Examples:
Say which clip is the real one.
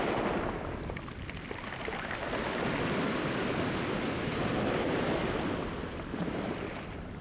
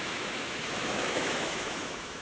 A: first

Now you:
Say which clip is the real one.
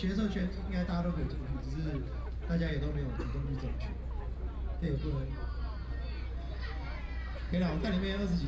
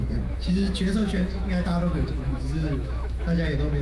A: first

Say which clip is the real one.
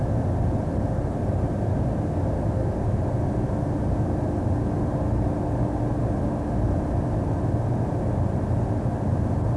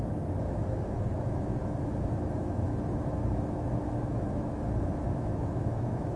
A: first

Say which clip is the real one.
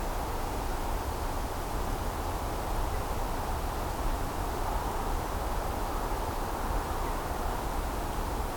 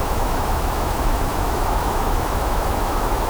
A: first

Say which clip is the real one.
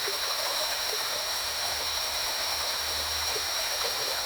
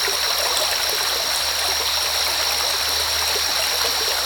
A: second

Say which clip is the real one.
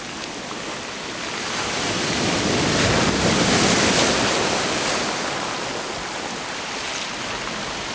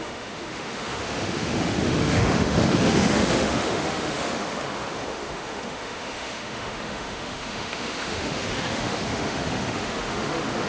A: first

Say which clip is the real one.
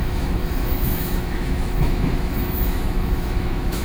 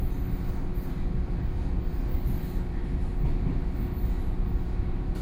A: second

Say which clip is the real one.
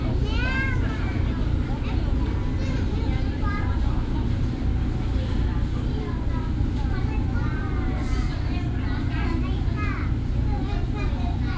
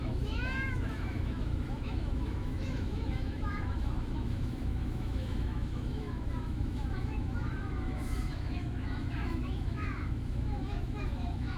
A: first